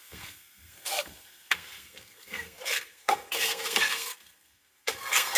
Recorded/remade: remade